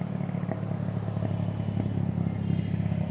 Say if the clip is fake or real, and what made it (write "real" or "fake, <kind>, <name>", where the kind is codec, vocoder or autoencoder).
real